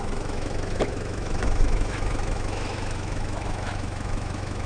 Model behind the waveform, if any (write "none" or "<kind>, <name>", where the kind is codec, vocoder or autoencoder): autoencoder, DAC-VAE